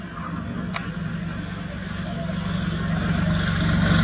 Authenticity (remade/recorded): recorded